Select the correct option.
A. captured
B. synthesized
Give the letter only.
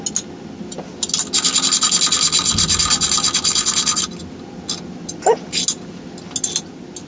A